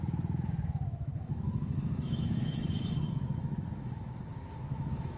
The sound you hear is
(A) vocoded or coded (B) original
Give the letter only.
A